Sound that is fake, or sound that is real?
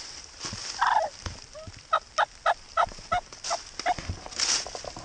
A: real